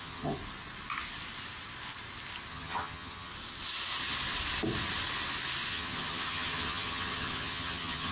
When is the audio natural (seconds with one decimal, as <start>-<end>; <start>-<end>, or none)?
0.4-2.5; 3.3-5.7